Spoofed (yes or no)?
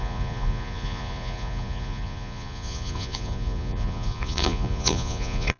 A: yes